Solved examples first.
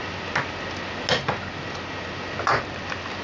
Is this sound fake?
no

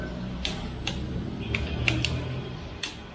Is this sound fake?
no